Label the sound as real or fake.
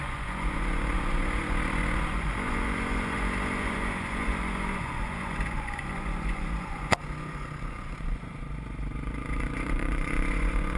fake